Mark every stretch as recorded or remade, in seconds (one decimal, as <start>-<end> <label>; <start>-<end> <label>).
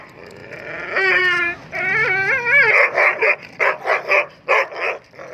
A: 0.0-0.4 recorded; 0.4-1.2 remade; 1.2-3.1 recorded; 3.1-4.3 remade; 4.3-5.3 recorded